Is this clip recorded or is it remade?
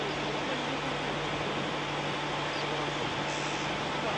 recorded